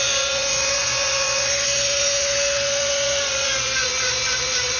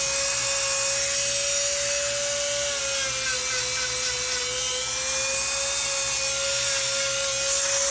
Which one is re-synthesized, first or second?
first